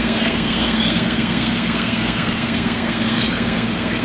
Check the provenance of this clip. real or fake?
fake